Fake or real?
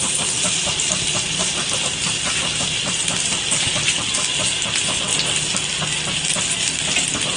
real